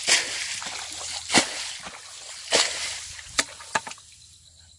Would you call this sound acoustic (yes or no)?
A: yes